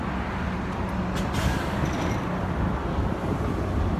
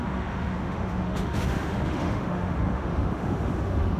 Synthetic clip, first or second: second